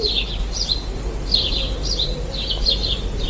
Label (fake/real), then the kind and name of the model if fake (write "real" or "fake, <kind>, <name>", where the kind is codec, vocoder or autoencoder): real